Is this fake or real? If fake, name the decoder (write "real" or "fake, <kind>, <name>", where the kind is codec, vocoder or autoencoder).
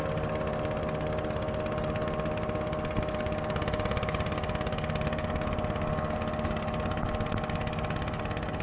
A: real